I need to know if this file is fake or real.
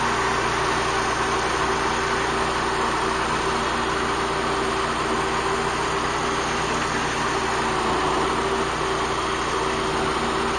real